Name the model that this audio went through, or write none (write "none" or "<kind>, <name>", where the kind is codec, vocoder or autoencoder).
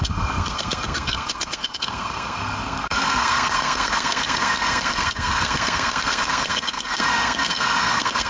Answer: codec, SNAC